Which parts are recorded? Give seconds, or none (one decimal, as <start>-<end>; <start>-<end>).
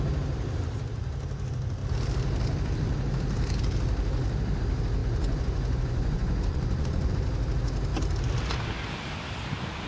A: 0.0-5.0; 7.1-9.9